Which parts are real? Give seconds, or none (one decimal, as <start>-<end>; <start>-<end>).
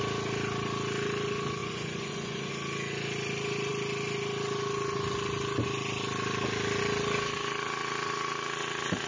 0.0-1.6; 2.5-9.1